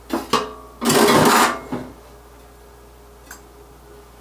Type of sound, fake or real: real